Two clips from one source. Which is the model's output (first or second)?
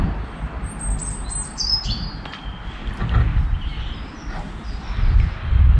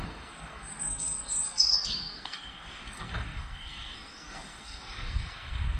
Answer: second